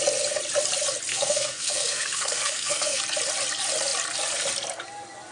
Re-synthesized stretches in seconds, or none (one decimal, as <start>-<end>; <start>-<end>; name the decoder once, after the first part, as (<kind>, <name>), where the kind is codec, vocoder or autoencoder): 1.1-3.0 (codec, SNAC)